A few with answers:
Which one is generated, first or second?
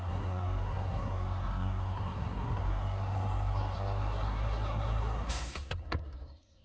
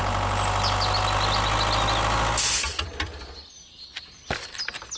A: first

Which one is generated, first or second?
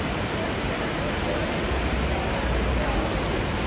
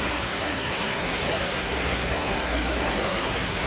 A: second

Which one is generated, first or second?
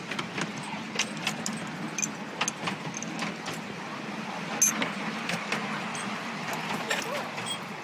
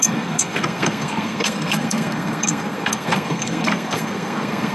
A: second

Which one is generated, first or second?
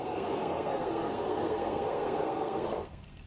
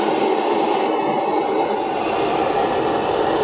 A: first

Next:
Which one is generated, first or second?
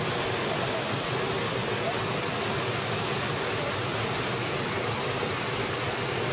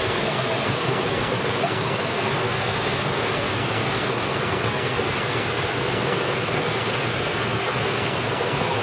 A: second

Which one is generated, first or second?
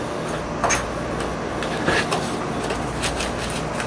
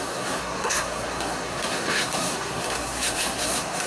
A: second